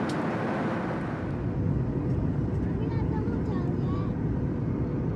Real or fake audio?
real